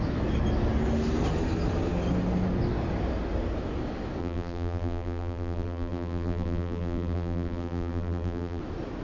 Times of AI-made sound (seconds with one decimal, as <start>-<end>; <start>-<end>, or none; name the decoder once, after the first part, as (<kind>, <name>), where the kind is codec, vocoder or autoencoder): 4.2-8.6 (vocoder, BigVGAN v2)